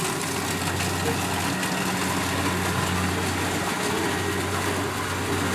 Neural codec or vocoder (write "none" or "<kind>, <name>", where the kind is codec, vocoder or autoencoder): none